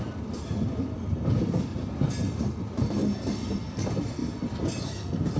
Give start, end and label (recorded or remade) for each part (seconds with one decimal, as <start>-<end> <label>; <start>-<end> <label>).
0.0-1.7 remade; 1.7-3.5 recorded; 3.5-4.2 remade; 4.2-4.8 recorded; 4.8-5.4 remade